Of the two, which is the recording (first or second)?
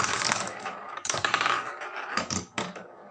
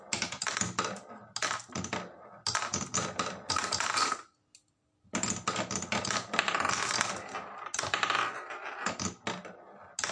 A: second